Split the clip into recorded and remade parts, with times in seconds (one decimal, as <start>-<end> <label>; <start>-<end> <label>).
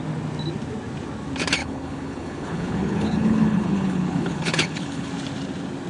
0.0-1.6 recorded; 1.6-5.1 remade; 5.1-5.9 recorded